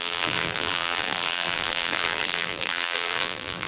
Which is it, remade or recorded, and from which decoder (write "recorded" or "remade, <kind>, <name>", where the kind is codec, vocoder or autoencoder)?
remade, vocoder, BigVGAN v2